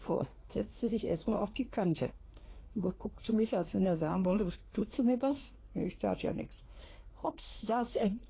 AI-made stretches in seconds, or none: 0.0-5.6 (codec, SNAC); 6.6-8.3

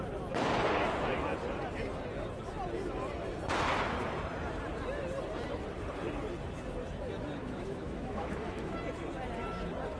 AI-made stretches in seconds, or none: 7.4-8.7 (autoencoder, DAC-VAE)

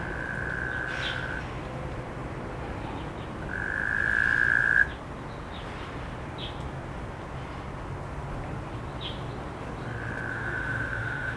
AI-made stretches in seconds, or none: 10.3-11.4 (autoencoder, DAC-VAE)